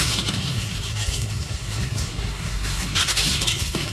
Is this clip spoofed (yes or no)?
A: yes